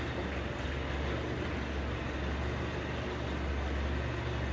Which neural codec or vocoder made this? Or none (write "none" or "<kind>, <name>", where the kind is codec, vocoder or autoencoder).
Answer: none